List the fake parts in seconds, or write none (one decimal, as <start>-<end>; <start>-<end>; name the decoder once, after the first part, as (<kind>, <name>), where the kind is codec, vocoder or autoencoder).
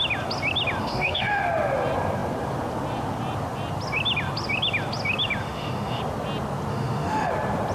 0.8-1.4 (autoencoder, DAC-VAE); 5.4-6.0; 6.7-7.3